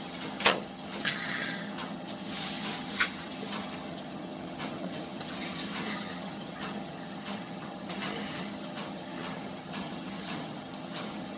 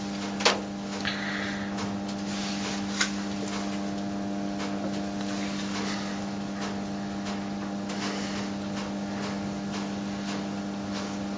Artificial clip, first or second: first